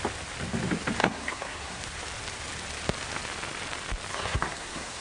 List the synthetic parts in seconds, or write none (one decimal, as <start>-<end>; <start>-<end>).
1.0-1.8; 4.1-5.0

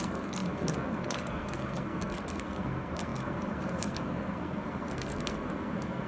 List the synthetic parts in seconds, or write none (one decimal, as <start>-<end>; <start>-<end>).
0.0-6.1

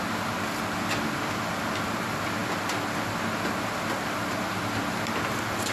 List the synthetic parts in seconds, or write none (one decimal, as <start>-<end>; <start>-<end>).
none

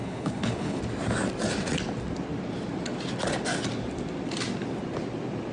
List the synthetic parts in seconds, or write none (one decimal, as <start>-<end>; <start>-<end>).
0.0-0.8

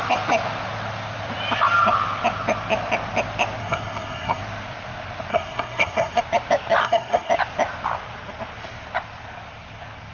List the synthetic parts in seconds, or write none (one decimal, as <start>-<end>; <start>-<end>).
3.6-4.4; 5.3-6.2; 6.8-7.3

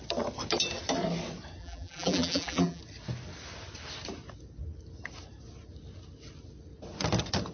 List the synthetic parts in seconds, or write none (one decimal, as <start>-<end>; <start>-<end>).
1.6-2.8